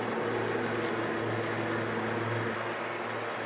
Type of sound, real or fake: real